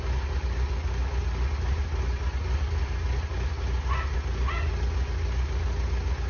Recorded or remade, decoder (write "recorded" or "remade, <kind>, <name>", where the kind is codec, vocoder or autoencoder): recorded